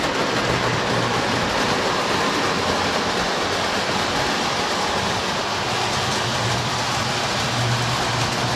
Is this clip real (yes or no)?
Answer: yes